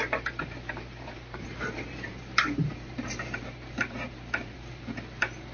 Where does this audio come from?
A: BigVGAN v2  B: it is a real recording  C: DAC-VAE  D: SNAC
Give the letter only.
A